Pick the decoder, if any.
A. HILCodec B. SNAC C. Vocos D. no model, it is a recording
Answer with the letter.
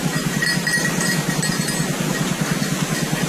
D